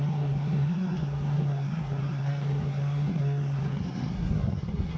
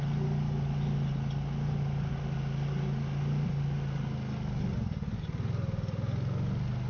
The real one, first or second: second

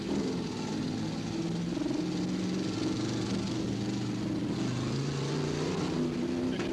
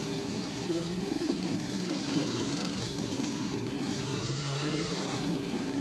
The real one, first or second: first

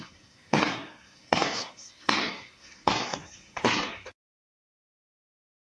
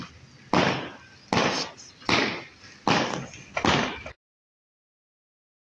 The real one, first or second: second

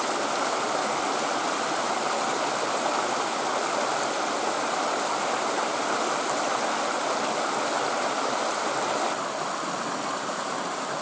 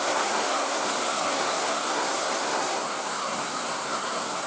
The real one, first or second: first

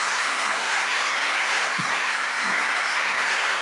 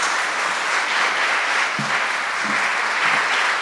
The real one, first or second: second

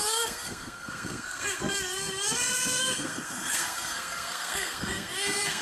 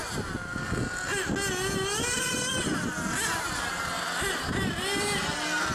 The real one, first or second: second